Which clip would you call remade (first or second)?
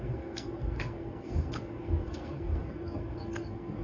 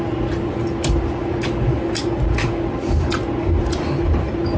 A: first